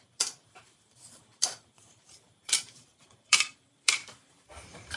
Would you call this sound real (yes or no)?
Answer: no